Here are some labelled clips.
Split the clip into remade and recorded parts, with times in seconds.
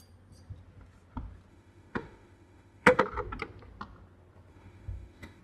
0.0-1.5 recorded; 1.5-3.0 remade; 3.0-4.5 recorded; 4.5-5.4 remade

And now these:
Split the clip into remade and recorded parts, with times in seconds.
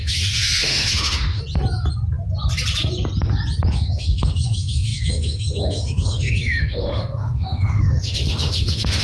0.0-1.4 remade; 1.4-3.7 recorded; 3.7-9.0 remade